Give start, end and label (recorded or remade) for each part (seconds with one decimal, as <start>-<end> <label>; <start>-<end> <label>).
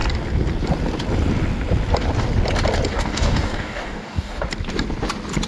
0.0-2.9 recorded; 2.9-4.4 remade; 4.4-5.5 recorded